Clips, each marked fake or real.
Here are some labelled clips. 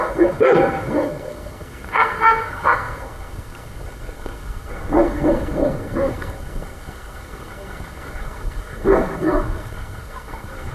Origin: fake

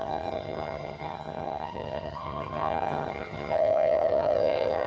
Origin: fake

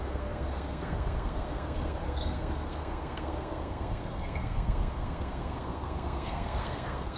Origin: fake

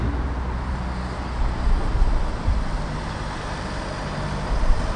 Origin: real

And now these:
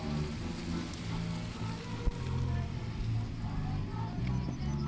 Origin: real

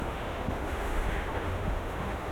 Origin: fake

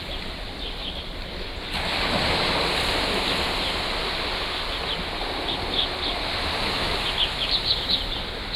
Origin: real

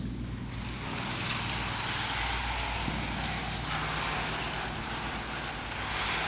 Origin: real